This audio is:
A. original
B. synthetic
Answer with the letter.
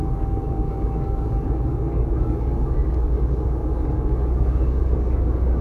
B